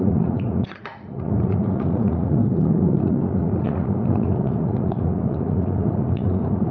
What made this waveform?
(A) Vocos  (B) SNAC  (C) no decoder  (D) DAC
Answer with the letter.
A